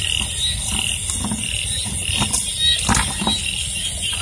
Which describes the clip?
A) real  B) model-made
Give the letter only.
A